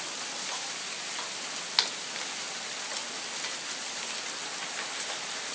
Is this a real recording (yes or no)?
yes